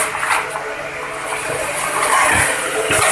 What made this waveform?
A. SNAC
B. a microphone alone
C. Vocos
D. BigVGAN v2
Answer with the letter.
B